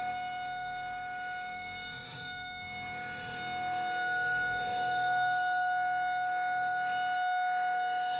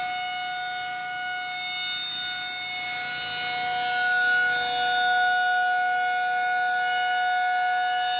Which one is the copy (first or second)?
first